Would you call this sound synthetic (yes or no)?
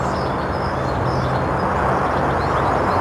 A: no